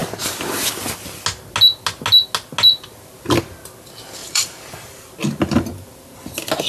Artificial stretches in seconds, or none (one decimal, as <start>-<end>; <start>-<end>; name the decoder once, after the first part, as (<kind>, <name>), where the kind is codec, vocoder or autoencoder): 4.2-5.0 (vocoder, BigVGAN v2)